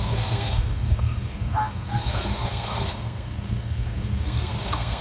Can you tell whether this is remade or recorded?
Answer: remade